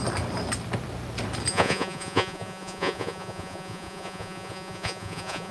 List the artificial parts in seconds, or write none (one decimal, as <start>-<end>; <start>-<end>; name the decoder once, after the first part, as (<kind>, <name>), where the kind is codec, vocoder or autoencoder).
1.5-5.5 (vocoder, Vocos)

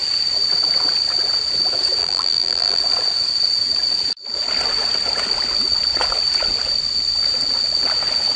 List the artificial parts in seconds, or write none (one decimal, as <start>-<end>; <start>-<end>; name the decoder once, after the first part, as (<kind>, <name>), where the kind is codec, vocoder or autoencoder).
2.0-2.8 (vocoder, BigVGAN v2)

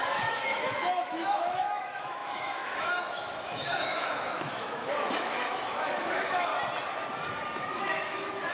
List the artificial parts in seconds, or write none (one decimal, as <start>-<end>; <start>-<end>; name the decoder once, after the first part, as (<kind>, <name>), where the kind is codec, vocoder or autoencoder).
0.0-6.5 (autoencoder, DAC-VAE); 7.6-8.5

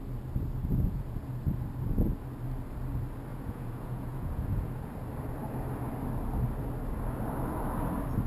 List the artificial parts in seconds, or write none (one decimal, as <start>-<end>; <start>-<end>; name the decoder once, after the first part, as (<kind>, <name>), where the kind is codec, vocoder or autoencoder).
0.7-1.3 (vocoder, Vocos); 3.3-4.9